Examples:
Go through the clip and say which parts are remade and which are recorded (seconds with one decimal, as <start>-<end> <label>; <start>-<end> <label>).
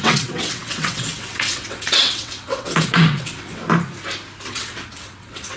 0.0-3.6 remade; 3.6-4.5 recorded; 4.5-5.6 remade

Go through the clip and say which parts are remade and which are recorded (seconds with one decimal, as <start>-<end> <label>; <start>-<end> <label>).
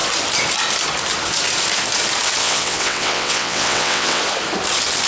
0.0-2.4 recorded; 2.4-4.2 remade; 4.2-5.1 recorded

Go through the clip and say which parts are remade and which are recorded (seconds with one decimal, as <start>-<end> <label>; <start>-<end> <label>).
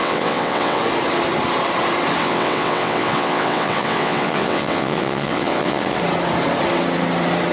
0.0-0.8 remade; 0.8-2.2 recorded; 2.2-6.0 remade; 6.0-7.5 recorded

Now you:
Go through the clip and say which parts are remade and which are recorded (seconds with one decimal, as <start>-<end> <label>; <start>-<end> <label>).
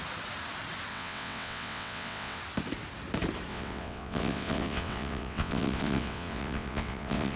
0.0-0.9 recorded; 0.9-2.4 remade; 2.4-3.5 recorded; 3.5-7.4 remade